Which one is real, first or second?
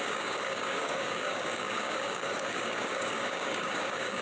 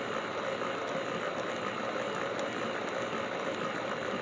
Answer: second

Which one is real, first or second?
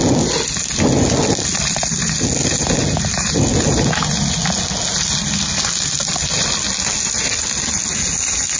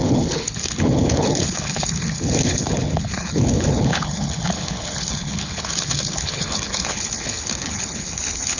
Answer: first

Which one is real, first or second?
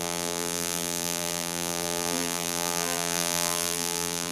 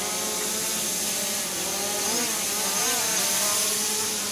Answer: second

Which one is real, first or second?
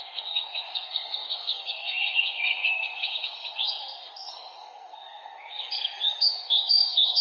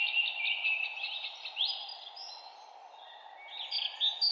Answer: second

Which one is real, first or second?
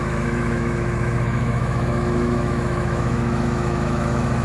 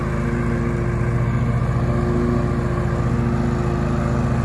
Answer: second